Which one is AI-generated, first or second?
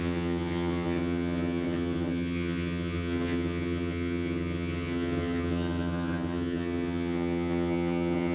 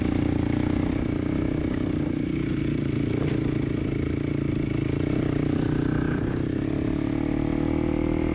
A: first